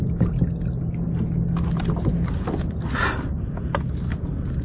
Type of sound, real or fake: real